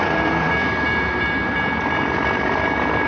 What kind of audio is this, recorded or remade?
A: remade